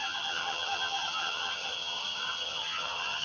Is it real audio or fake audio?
fake